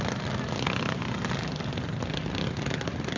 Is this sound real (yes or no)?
yes